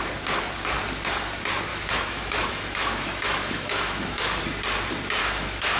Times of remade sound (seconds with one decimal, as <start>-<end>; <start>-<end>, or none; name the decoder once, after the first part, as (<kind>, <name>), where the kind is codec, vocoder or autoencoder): 1.7-4.4 (autoencoder, DAC-VAE); 5.2-5.8